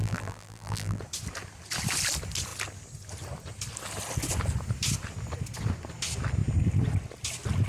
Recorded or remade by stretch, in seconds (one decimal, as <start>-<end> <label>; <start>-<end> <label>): 0.0-1.0 remade; 1.0-7.7 recorded